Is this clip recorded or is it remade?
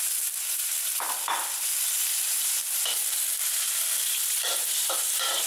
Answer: remade